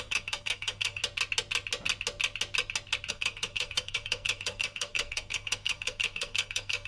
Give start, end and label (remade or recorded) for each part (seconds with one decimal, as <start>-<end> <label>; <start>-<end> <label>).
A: 0.0-1.0 remade; 1.0-3.1 recorded; 3.1-6.9 remade